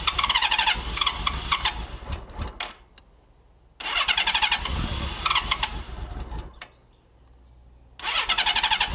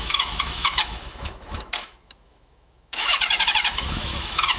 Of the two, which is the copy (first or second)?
second